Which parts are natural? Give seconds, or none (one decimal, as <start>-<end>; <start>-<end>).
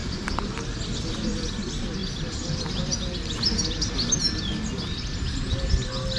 0.0-6.2